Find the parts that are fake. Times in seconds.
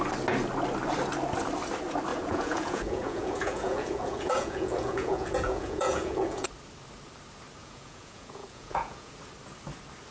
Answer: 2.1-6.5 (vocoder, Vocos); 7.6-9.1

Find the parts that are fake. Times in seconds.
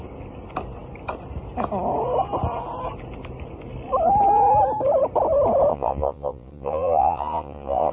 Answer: 5.7-7.9 (vocoder, Vocos)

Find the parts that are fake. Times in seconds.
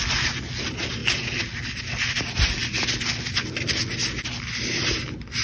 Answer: none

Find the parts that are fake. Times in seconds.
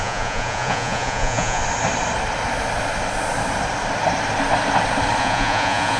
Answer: 0.0-1.6 (vocoder, Vocos); 5.2-6.0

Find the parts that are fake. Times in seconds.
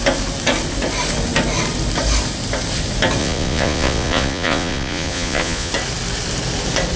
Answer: 3.2-5.7 (vocoder, Vocos)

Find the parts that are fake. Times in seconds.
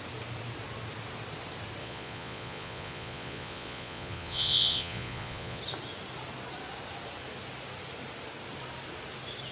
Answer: 1.8-5.6 (vocoder, Vocos)